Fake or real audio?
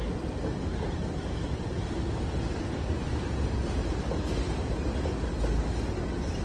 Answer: real